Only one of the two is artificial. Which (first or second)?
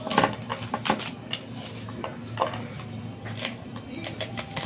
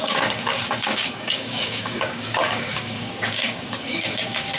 second